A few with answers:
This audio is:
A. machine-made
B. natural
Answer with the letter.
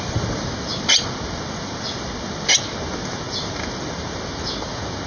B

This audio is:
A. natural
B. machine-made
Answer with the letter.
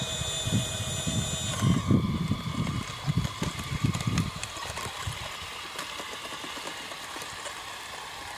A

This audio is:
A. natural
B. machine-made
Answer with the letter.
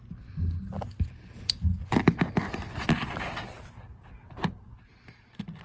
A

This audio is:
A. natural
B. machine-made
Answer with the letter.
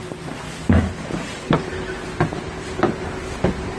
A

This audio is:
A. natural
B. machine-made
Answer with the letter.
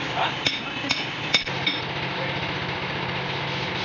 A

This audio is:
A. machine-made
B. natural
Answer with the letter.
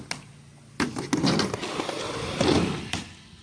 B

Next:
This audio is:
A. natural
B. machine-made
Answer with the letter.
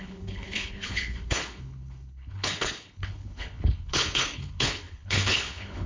B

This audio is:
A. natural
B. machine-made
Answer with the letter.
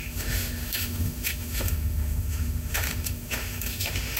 B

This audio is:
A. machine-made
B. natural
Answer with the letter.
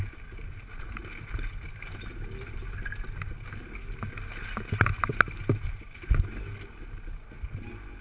B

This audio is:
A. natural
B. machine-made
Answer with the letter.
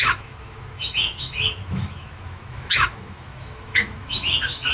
B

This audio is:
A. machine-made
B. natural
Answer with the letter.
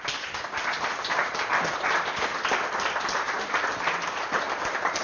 B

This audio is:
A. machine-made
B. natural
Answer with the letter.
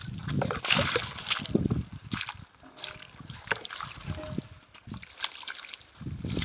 A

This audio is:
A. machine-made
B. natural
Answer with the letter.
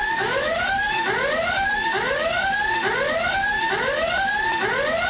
B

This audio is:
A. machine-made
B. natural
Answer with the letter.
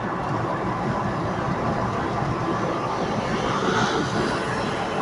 B